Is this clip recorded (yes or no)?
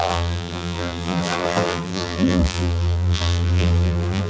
no